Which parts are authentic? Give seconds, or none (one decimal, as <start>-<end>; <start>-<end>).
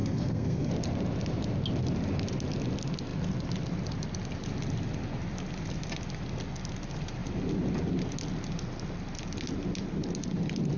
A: 0.7-10.8